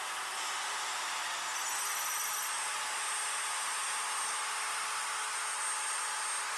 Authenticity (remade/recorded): recorded